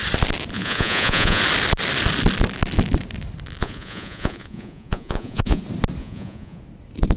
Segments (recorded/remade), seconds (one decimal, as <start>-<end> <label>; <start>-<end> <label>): 0.0-0.5 recorded; 0.5-1.4 remade; 1.4-3.6 recorded; 3.6-5.6 remade; 5.6-6.0 recorded; 6.0-6.6 remade; 6.6-7.2 recorded